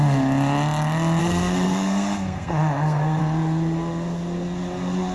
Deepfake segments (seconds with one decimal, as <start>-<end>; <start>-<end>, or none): 1.2-3.2